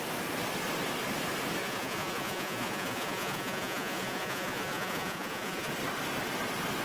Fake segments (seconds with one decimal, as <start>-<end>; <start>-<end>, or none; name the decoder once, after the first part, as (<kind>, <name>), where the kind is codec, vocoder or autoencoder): 1.6-5.7 (vocoder, Vocos)

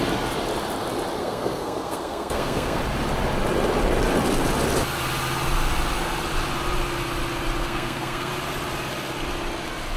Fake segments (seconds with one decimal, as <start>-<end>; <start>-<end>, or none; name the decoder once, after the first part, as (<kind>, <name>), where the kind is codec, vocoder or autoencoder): 1.2-2.8 (codec, SNAC); 7.6-8.3

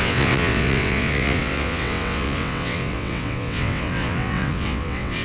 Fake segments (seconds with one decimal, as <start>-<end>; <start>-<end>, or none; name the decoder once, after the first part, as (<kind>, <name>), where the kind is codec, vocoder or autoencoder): 0.0-5.2 (vocoder, WaveNeXt)

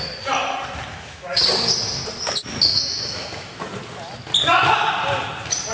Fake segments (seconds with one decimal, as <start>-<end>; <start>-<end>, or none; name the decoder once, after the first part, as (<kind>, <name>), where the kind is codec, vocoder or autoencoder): 0.9-1.4 (autoencoder, DAC-VAE); 2.7-3.6

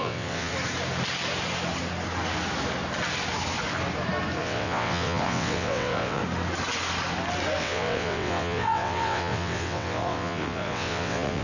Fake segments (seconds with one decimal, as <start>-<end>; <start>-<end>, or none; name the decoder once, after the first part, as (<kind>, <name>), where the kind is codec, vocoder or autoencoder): 0.0-0.5 (vocoder, WaveNeXt); 4.4-6.2; 7.6-11.4

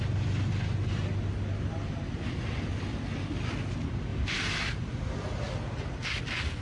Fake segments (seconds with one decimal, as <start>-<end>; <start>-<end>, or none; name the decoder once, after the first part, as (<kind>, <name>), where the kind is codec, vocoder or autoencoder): 4.1-4.6 (vocoder, BigVGAN v2)